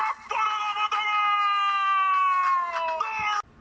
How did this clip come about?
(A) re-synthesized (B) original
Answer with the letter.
B